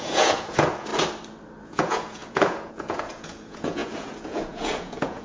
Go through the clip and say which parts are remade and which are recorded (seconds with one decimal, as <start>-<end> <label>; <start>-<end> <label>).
0.0-0.9 remade; 0.9-1.6 recorded; 1.6-5.2 remade